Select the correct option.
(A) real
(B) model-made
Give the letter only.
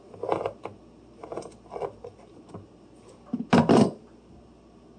A